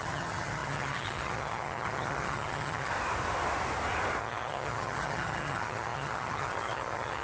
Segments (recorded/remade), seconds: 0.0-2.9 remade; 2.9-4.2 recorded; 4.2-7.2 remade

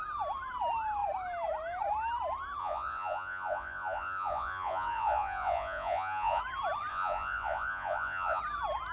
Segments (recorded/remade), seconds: 0.0-2.6 recorded; 2.6-6.4 remade; 6.4-6.9 recorded; 6.9-8.4 remade; 8.4-8.9 recorded

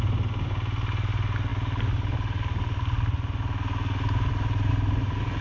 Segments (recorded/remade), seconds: 0.0-5.4 recorded

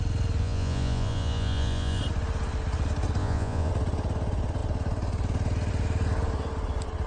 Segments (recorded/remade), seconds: 0.0-0.4 recorded; 0.4-2.0 remade; 2.0-3.2 recorded; 3.2-3.7 remade; 3.7-7.1 recorded

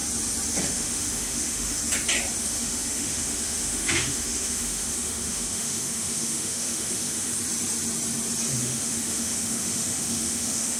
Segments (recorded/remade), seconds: 0.0-0.6 recorded; 0.6-1.8 remade; 1.8-2.4 recorded; 2.4-7.3 remade; 7.3-8.6 recorded; 8.6-10.8 remade

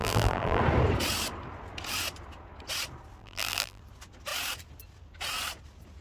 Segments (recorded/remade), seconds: 0.0-0.6 remade; 0.6-3.2 recorded; 3.2-3.8 remade; 3.8-6.0 recorded

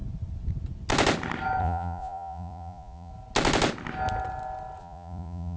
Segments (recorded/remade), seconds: 0.0-1.6 recorded; 1.6-3.1 remade; 3.1-4.8 recorded; 4.8-5.6 remade